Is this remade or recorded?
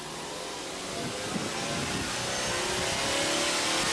recorded